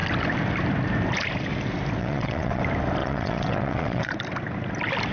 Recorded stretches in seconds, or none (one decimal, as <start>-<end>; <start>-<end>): 0.0-2.0; 2.6-3.0; 4.1-5.1